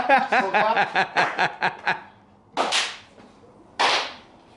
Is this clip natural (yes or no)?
yes